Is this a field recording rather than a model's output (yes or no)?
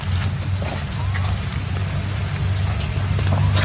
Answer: yes